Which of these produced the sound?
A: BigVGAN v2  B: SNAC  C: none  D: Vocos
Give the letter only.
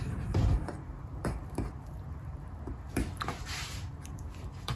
A